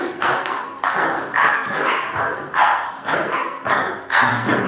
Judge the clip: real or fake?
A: fake